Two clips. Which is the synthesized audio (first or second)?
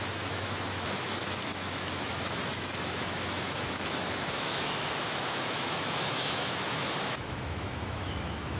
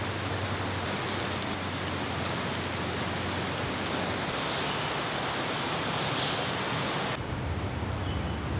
first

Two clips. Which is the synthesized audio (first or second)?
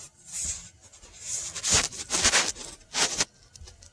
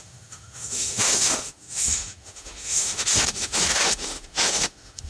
second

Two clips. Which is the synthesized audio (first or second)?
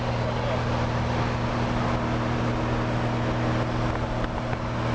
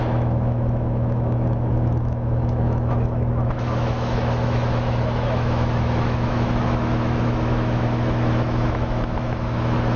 second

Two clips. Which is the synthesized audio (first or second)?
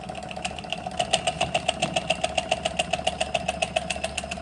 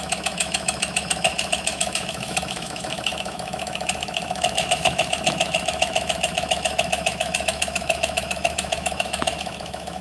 second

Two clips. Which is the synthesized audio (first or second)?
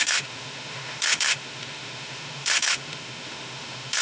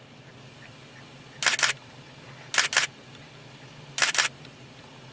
first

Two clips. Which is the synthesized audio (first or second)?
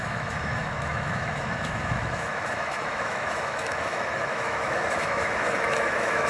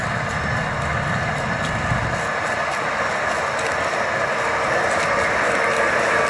first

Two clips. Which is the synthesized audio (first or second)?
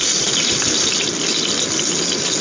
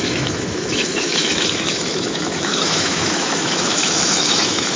second